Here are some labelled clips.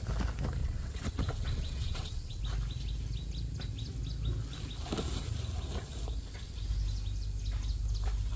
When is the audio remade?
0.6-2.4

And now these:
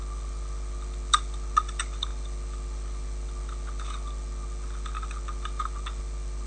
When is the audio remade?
none

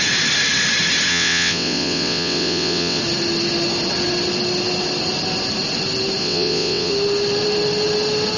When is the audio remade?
1.1-3.0; 6.2-6.9

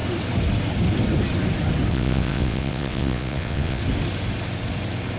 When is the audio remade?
1.9-3.8

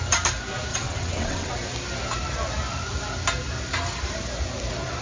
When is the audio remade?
0.7-1.5